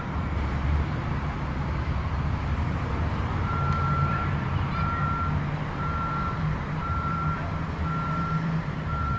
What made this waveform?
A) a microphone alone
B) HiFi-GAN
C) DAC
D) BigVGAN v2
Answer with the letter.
D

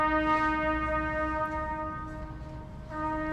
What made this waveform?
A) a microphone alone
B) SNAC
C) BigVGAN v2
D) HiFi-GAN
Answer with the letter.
A